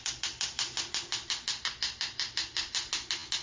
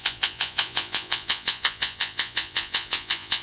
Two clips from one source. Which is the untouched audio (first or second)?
first